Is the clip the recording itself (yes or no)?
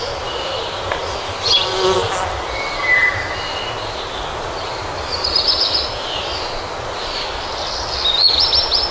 yes